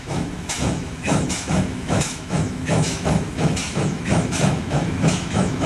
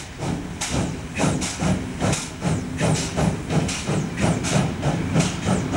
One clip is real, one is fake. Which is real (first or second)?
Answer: second